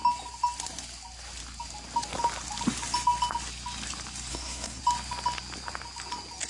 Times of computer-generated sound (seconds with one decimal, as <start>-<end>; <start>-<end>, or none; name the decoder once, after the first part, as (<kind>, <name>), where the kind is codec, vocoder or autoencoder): 4.3-4.8 (codec, SNAC)